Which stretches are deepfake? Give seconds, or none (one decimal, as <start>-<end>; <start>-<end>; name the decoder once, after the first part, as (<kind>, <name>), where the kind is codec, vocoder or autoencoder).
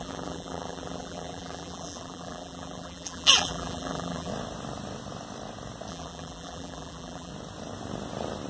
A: 0.0-4.3 (vocoder, BigVGAN v2); 5.9-7.3